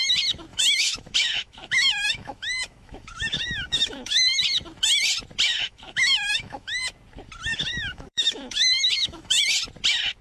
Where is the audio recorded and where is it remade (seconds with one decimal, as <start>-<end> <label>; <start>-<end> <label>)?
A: 0.0-0.5 recorded; 0.5-4.4 remade; 4.4-5.5 recorded; 5.5-6.8 remade; 6.8-7.5 recorded; 7.5-9.4 remade; 9.4-10.2 recorded